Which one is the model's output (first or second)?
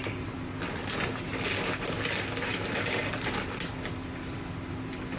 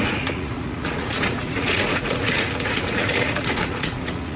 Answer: second